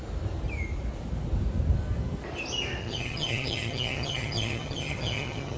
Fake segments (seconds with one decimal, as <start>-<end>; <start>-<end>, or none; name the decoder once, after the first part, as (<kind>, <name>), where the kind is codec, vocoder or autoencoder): 2.8-5.6 (vocoder, HiFi-GAN)